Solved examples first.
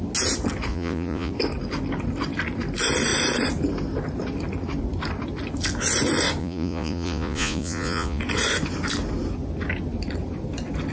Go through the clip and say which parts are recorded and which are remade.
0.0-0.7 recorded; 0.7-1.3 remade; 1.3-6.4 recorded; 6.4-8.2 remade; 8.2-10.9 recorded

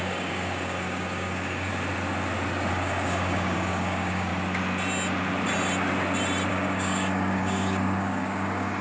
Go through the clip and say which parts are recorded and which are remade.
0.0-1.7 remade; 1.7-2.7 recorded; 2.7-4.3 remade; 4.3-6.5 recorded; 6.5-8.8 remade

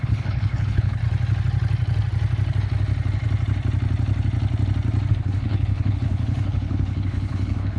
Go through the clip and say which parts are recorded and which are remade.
0.0-1.0 remade; 1.0-5.1 recorded; 5.1-7.8 remade

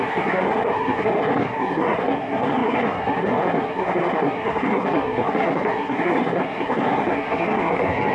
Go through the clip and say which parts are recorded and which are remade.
0.0-8.1 remade

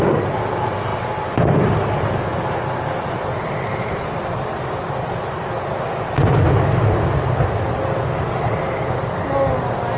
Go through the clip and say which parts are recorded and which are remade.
0.0-10.0 recorded

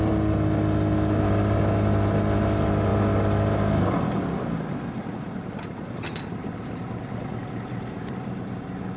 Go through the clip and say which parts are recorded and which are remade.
0.0-9.0 recorded